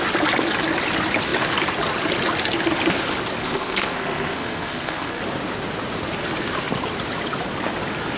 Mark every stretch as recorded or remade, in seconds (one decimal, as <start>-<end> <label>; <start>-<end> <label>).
0.0-3.4 recorded; 3.4-5.2 remade; 5.2-8.2 recorded